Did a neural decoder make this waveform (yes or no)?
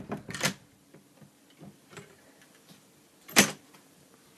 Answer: yes